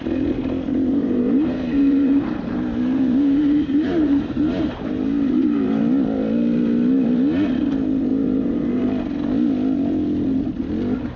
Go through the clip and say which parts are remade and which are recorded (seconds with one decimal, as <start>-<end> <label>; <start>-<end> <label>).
0.0-0.7 recorded; 0.7-5.8 remade; 5.8-8.1 recorded; 8.1-8.8 remade; 8.8-11.2 recorded

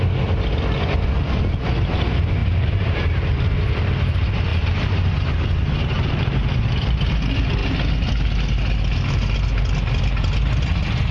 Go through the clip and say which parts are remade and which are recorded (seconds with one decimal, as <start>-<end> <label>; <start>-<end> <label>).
0.0-2.4 recorded; 2.4-3.4 remade; 3.4-4.5 recorded; 4.5-7.1 remade; 7.1-11.1 recorded